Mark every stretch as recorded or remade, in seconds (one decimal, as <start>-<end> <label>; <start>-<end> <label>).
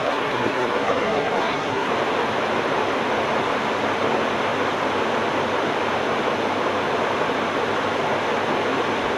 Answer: 0.0-1.9 remade; 1.9-9.2 recorded